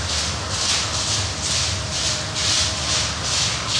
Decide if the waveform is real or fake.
real